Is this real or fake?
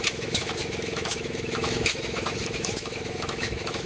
fake